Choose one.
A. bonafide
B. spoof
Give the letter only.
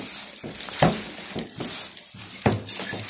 A